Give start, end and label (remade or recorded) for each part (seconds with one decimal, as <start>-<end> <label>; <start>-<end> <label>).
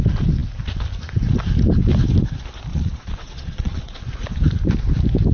0.0-2.7 recorded; 2.7-4.0 remade; 4.0-5.3 recorded